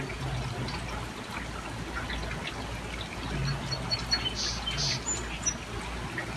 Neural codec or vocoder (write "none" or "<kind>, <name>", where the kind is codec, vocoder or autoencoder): none